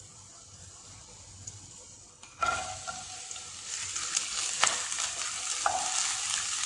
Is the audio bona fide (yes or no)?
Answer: yes